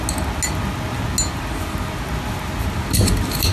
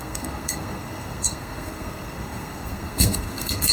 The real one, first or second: first